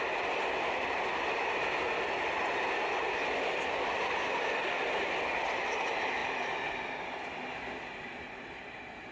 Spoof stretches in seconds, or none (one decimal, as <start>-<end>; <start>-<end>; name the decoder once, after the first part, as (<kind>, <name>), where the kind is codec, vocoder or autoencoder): none